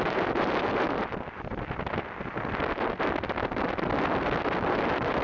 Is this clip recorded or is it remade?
recorded